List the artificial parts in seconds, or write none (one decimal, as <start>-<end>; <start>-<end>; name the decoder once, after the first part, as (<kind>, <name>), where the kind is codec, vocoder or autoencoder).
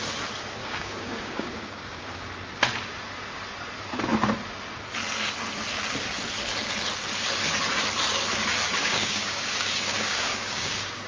0.6-2.3 (codec, DAC); 8.8-11.1